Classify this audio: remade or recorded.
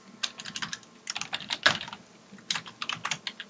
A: recorded